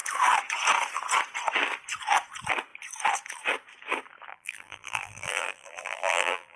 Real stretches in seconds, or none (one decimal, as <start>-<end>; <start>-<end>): 0.0-4.3